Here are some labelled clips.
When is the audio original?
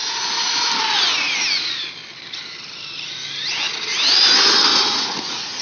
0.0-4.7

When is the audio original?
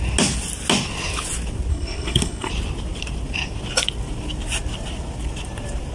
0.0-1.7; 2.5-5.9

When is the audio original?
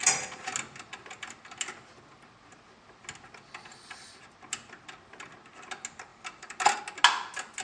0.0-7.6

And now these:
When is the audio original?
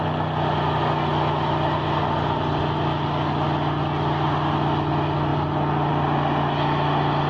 0.0-7.3